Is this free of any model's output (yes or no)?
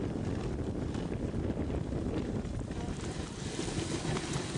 yes